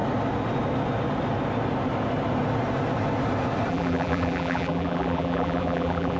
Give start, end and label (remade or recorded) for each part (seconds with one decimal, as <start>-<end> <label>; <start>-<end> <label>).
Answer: 0.0-3.7 recorded; 3.7-6.2 remade